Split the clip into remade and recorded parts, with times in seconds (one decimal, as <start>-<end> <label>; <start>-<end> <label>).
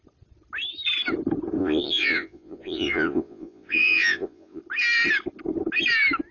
0.0-1.6 recorded; 1.6-4.6 remade; 4.6-6.3 recorded